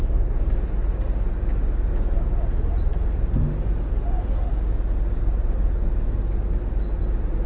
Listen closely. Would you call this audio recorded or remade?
recorded